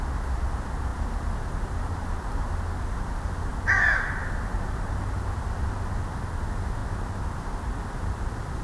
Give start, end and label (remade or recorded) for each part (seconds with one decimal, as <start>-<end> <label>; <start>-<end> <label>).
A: 0.0-8.6 recorded